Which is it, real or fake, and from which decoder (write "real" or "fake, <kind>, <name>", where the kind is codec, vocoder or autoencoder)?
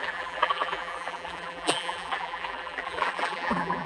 fake, vocoder, BigVGAN v2